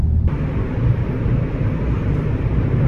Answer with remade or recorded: recorded